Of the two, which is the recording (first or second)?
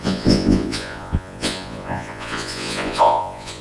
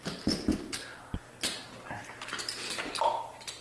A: second